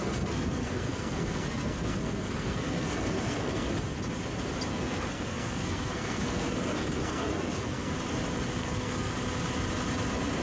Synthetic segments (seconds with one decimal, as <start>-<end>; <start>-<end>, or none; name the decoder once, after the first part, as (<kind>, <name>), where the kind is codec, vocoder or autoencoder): 0.0-3.7 (codec, SNAC); 4.7-7.9; 8.6-9.1